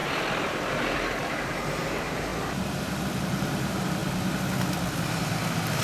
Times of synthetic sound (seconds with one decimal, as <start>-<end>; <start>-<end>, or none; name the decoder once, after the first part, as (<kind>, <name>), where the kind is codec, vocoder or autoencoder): 0.0-2.3 (vocoder, BigVGAN v2); 3.5-4.0; 5.1-5.8